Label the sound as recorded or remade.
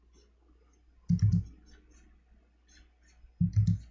recorded